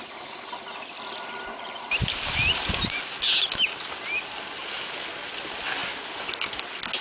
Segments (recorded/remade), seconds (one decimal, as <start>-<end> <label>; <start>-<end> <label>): 0.0-7.0 recorded

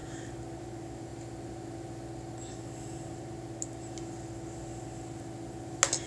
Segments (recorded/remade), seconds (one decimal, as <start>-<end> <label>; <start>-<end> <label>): 0.0-1.1 recorded; 1.1-2.5 remade; 2.5-6.1 recorded

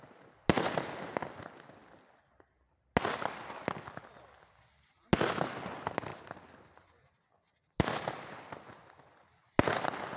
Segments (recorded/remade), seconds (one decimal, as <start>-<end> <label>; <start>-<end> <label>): 0.0-10.2 recorded

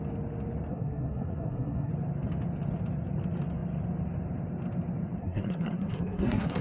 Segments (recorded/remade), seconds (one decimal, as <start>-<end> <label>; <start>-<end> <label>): 0.0-0.7 recorded; 0.7-1.9 remade; 1.9-5.2 recorded; 5.2-6.6 remade

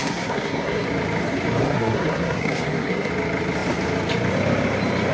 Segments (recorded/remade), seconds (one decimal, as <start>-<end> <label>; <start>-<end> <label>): 0.0-0.9 remade; 0.9-1.6 recorded; 1.6-3.1 remade; 3.1-5.1 recorded

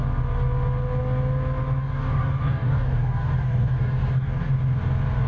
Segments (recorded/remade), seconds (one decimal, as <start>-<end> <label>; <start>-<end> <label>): 0.0-1.8 recorded; 1.8-4.5 remade; 4.5-5.3 recorded

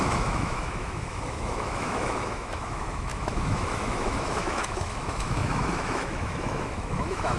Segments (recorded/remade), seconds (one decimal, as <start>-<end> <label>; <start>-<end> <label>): 0.0-7.4 remade